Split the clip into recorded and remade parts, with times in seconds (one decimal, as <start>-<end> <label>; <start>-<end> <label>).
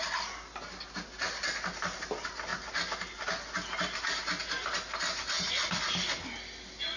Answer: 0.0-7.0 recorded